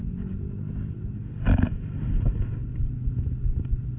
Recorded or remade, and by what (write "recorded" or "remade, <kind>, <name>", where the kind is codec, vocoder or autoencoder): recorded